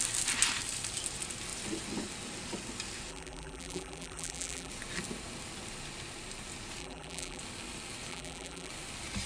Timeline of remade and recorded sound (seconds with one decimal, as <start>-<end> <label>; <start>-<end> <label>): 0.0-3.1 recorded; 3.1-4.7 remade; 4.7-6.8 recorded; 6.8-7.4 remade; 7.4-8.1 recorded; 8.1-8.7 remade; 8.7-9.3 recorded